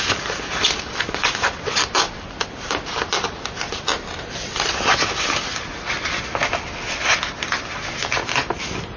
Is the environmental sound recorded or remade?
recorded